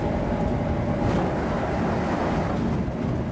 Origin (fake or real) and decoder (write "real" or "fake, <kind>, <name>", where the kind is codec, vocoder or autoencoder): real